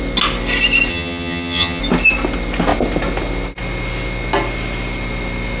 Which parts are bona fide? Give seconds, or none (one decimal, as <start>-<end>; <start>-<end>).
0.0-0.9; 1.8-5.6